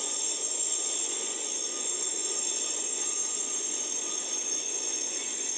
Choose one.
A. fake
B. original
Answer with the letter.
A